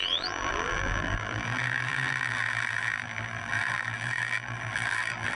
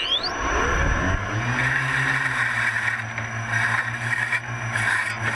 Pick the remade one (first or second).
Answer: first